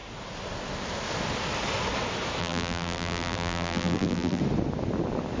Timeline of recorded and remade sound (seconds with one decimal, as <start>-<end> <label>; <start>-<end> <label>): 0.0-2.4 recorded; 2.4-4.4 remade; 4.4-5.4 recorded